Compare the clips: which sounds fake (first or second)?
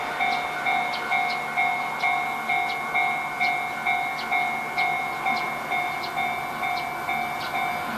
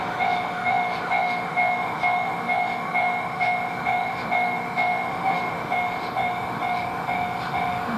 second